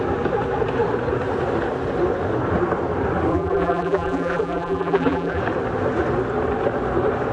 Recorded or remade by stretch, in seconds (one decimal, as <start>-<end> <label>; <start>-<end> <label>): 0.0-3.3 recorded; 3.3-5.4 remade; 5.4-7.3 recorded